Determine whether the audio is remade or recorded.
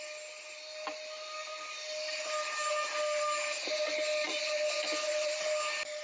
recorded